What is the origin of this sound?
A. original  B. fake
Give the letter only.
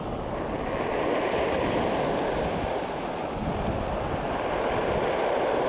A